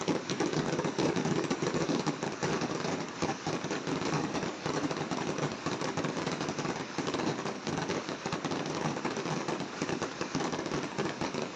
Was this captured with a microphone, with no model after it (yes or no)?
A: no